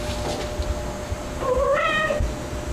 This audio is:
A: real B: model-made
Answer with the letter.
A